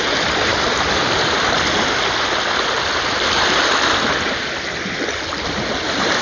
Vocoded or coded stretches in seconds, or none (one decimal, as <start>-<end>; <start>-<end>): none